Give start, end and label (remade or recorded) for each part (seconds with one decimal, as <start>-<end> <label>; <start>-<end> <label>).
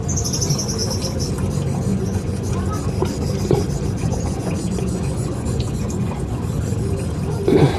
0.0-1.9 recorded; 1.9-2.5 remade; 2.5-4.0 recorded; 4.0-6.3 remade; 6.3-7.8 recorded